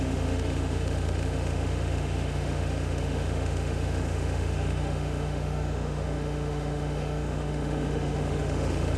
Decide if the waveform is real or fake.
fake